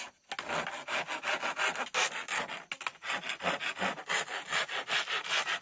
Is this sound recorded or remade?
recorded